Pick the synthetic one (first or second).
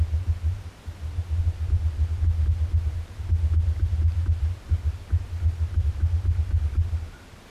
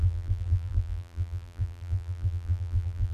second